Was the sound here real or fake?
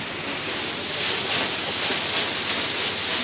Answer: real